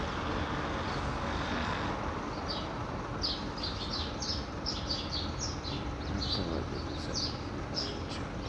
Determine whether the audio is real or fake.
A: real